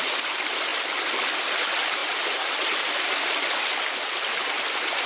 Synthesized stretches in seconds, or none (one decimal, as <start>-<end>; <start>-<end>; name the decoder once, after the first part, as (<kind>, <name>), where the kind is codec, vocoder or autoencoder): none